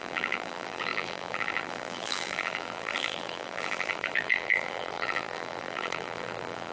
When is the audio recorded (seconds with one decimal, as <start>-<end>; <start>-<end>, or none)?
none